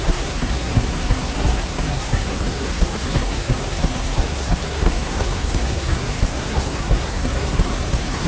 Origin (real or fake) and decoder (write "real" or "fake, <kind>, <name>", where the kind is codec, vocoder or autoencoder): fake, codec, SNAC